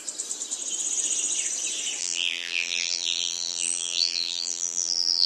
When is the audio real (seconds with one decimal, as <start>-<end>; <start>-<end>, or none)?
0.0-2.0